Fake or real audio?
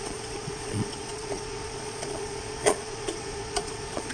fake